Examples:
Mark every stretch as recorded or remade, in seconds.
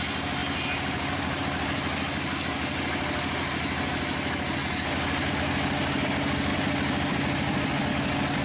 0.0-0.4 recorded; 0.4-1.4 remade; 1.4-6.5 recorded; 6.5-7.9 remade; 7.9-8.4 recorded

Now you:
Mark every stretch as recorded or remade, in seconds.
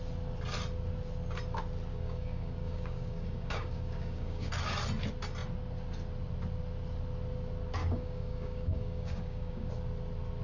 0.0-1.9 recorded; 1.9-4.5 remade; 4.5-7.8 recorded; 7.8-9.7 remade; 9.7-10.4 recorded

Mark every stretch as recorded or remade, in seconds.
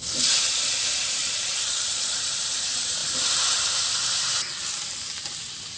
0.0-1.2 recorded; 1.2-2.4 remade; 2.4-5.8 recorded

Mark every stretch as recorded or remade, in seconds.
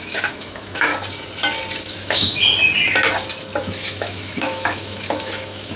0.0-0.9 remade; 0.9-1.9 recorded; 1.9-2.4 remade; 2.4-3.6 recorded; 3.6-5.8 remade